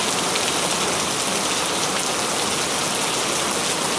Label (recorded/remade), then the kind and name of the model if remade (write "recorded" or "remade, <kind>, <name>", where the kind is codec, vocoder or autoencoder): recorded